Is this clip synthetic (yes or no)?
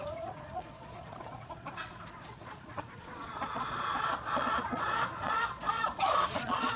yes